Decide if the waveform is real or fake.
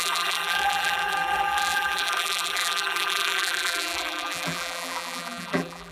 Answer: fake